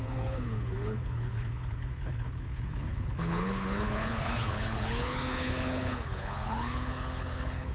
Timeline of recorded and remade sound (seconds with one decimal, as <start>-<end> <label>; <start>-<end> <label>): 0.0-7.7 remade